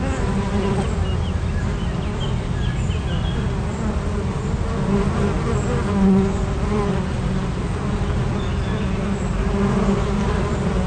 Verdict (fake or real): real